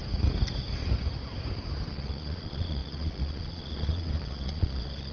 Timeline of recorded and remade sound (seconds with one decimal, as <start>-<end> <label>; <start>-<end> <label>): 0.0-1.9 recorded; 1.9-5.1 remade